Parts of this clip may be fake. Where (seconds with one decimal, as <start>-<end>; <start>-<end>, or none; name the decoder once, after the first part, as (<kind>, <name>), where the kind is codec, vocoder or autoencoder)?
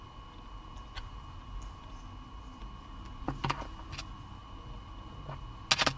none